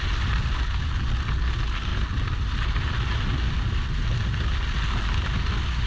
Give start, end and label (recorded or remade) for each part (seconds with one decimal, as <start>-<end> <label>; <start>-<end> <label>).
0.0-5.9 recorded